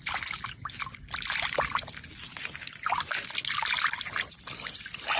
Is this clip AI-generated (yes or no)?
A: no